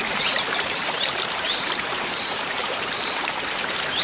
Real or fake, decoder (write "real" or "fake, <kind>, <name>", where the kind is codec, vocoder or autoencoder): fake, vocoder, BigVGAN v2